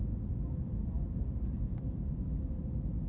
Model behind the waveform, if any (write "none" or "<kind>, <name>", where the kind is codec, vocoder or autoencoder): none